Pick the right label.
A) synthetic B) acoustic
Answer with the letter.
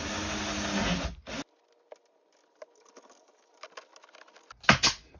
B